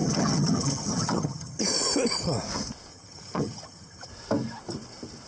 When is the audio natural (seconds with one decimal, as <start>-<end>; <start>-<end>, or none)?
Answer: 1.6-2.9; 4.1-5.3